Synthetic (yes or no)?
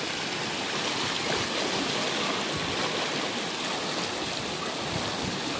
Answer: no